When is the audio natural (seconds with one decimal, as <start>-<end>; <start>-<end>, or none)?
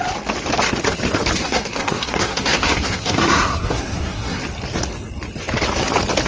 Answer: 0.0-1.4; 4.4-6.3